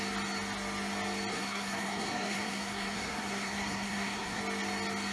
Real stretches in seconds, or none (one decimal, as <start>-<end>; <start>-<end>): 0.0-1.3; 4.4-5.1